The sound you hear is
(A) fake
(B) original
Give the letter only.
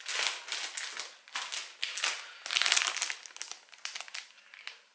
B